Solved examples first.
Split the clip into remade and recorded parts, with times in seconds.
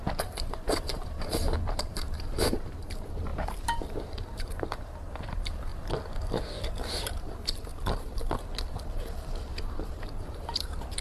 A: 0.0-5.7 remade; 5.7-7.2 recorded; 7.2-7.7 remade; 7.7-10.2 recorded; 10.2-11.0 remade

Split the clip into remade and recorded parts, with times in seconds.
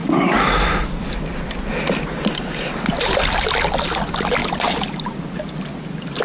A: 0.0-6.2 recorded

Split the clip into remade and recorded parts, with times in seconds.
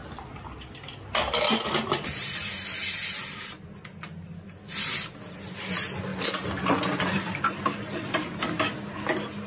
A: 0.0-9.5 recorded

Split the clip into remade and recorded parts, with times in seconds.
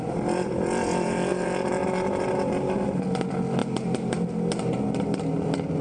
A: 0.0-1.3 recorded; 1.3-2.3 remade; 2.3-3.6 recorded; 3.6-4.3 remade; 4.3-5.8 recorded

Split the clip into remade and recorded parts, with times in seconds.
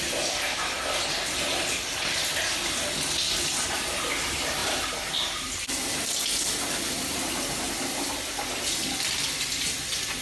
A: 0.0-4.6 recorded; 4.6-6.1 remade; 6.1-10.2 recorded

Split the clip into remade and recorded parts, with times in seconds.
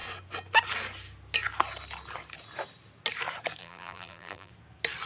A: 0.0-3.6 recorded; 3.6-4.5 remade; 4.5-5.1 recorded